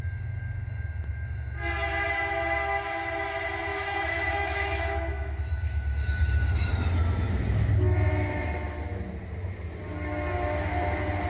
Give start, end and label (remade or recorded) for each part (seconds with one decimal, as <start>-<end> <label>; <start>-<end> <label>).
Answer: 0.0-3.7 recorded; 3.7-6.7 remade; 6.7-11.3 recorded